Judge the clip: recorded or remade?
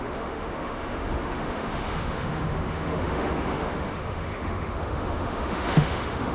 remade